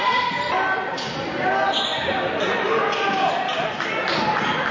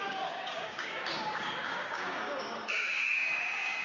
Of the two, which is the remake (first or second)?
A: second